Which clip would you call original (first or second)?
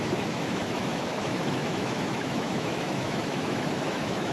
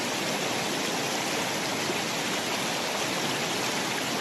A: second